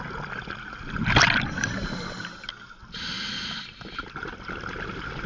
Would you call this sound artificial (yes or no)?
no